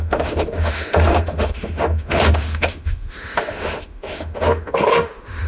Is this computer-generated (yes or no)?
yes